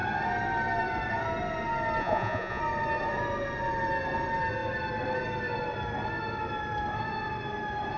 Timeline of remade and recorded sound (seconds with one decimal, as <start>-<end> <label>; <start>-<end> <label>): 0.0-2.0 recorded; 2.0-2.6 remade; 2.6-8.0 recorded